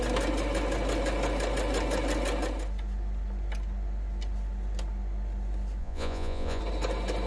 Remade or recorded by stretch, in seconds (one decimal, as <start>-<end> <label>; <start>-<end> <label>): 0.0-5.8 recorded; 5.8-6.6 remade; 6.6-7.3 recorded